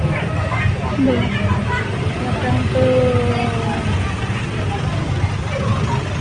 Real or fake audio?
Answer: real